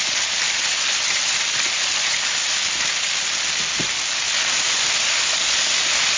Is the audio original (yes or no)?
yes